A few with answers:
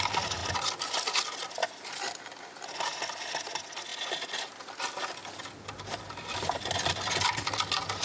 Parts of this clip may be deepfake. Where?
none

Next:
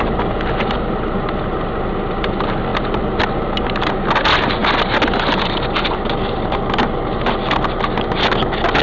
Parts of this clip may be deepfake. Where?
none

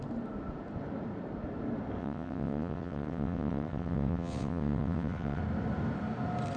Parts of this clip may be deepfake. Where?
2.0-5.4 (vocoder, WaveNeXt)

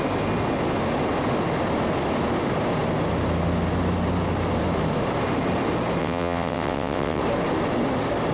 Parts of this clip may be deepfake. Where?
6.0-7.2 (vocoder, WaveNeXt)

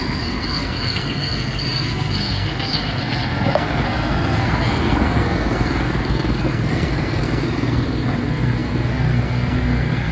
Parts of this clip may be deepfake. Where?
0.0-10.1 (codec, SNAC)

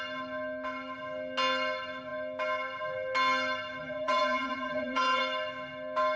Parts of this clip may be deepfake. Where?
3.8-5.2 (vocoder, BigVGAN v2)

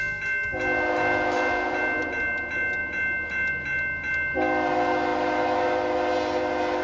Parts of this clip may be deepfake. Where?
none

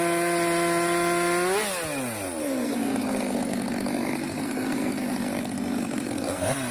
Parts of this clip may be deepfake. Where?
2.4-6.7 (codec, SNAC)